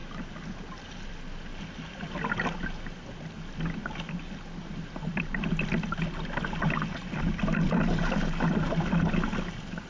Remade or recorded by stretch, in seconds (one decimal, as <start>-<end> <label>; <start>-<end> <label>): 0.0-9.9 recorded